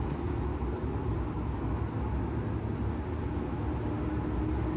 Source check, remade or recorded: recorded